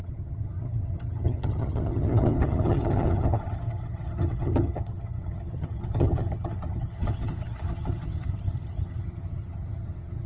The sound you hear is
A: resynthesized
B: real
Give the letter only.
A